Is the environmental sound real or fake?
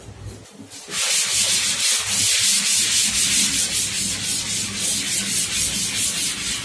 real